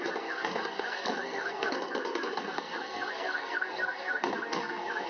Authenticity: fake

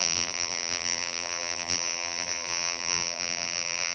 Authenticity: fake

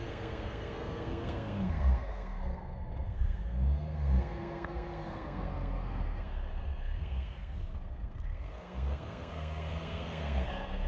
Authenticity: fake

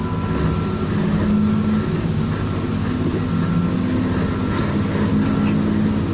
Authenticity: real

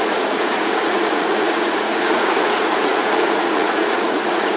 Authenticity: fake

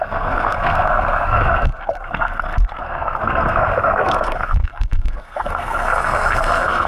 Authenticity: fake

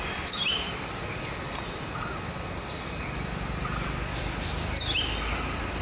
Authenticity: real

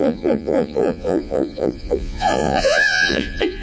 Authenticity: fake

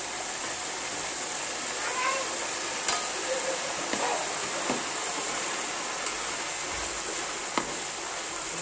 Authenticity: real